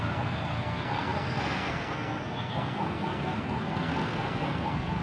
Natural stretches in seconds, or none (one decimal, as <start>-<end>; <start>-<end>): none